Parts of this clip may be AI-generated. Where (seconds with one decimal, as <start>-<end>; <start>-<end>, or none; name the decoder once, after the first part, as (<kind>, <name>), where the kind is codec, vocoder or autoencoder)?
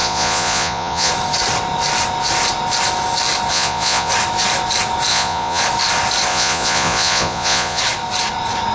0.0-1.1 (vocoder, Vocos); 3.5-4.1; 5.1-5.6; 6.3-7.8